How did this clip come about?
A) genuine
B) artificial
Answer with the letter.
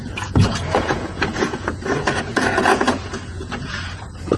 B